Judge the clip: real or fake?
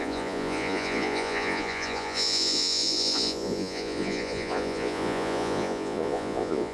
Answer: fake